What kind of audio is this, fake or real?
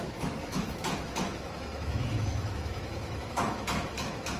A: fake